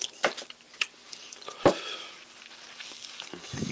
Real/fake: real